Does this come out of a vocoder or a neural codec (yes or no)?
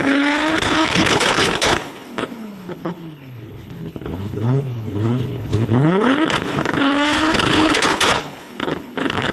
yes